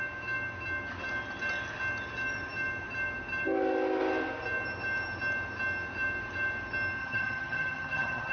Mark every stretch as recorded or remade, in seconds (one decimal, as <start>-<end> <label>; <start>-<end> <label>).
0.0-7.0 recorded; 7.0-8.3 remade